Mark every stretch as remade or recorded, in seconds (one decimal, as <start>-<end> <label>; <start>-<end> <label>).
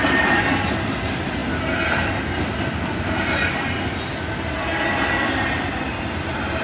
0.0-6.6 recorded